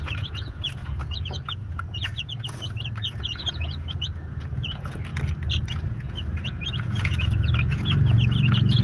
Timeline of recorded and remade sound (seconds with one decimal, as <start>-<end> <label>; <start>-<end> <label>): 0.0-5.1 remade; 5.1-5.7 recorded; 5.7-8.8 remade

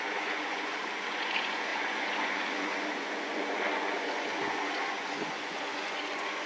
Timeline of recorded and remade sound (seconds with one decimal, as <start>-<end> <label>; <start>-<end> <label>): 0.0-6.5 remade

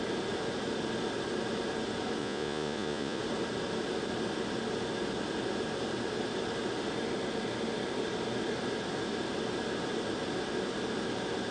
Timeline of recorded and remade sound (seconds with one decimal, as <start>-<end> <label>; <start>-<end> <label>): 0.0-2.2 recorded; 2.2-3.2 remade; 3.2-11.5 recorded

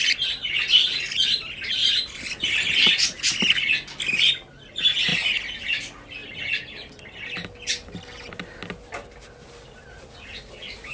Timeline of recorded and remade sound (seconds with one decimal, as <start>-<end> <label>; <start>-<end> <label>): 0.0-10.9 recorded

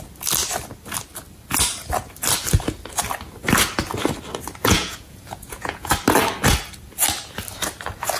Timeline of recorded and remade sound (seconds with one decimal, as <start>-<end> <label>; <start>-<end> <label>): 0.0-4.6 recorded; 4.6-5.9 remade; 5.9-8.2 recorded